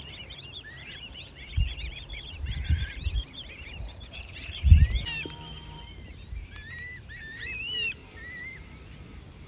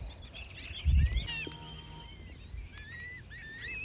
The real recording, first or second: second